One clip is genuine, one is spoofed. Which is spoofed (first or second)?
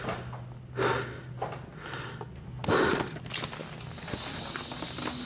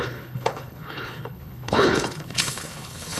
second